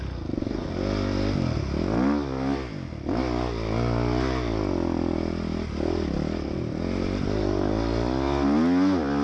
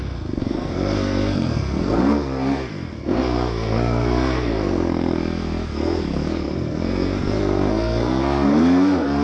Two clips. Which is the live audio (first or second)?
first